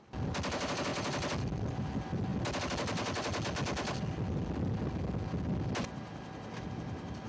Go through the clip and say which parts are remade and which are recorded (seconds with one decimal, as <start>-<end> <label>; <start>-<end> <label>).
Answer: 0.0-7.3 recorded